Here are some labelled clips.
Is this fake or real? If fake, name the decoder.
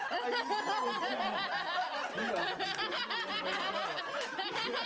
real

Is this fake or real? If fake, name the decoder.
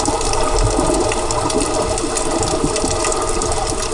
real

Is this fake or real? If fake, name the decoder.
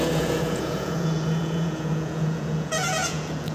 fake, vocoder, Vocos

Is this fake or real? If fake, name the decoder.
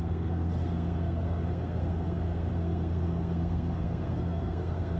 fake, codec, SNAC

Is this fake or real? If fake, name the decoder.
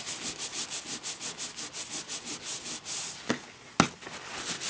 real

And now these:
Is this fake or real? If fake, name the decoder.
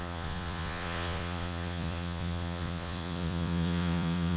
fake, vocoder, Vocos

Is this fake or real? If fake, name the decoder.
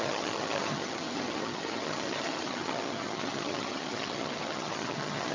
fake, vocoder, HiFi-GAN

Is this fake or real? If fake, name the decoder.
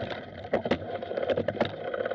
real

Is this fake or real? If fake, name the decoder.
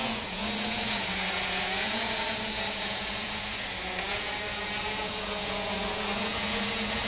fake, vocoder, Vocos